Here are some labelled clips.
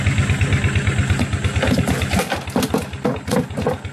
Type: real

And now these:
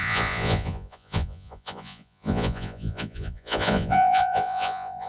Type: fake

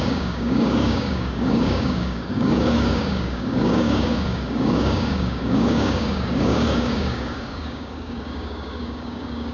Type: fake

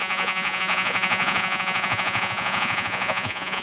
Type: fake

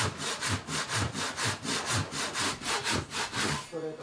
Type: real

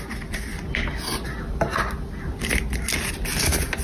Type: real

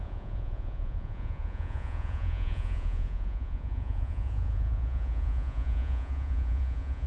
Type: fake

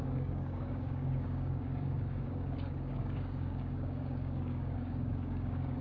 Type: fake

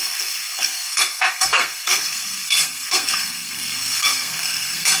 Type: fake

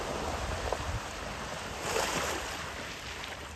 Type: real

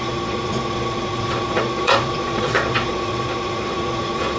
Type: fake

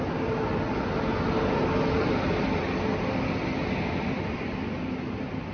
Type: real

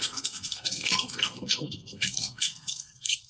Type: fake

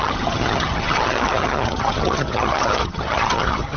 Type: fake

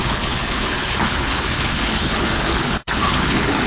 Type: fake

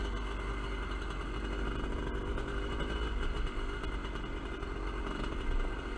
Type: real